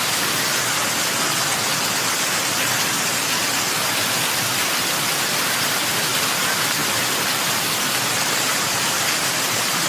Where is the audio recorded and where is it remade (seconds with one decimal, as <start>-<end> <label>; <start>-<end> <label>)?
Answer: 0.0-0.5 remade; 0.5-5.5 recorded; 5.5-6.8 remade; 6.8-8.0 recorded; 8.0-9.9 remade